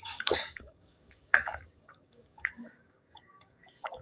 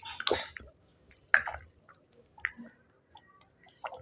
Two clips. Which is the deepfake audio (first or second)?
first